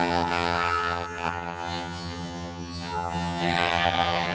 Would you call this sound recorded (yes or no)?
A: no